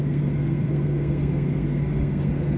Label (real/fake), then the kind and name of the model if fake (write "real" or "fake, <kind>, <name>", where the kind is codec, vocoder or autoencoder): fake, codec, SNAC